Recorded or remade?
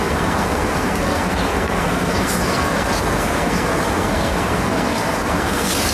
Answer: remade